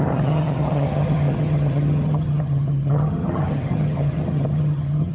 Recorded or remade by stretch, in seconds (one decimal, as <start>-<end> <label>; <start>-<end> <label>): 0.0-5.1 remade